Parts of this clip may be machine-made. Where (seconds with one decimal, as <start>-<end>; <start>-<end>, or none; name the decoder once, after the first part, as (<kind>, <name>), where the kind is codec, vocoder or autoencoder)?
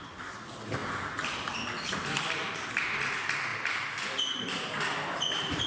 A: 0.8-2.7 (vocoder, BigVGAN v2)